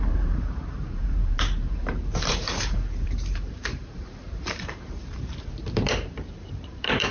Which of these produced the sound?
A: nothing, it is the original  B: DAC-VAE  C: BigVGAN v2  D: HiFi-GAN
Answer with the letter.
C